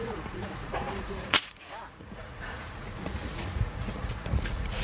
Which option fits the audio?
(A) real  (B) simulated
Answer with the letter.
B